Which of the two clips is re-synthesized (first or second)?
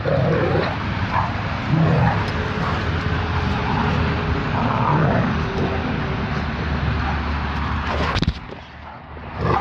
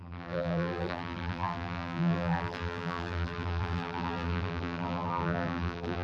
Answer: second